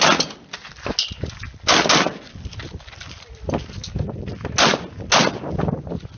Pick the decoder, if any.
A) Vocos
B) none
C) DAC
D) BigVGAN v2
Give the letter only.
B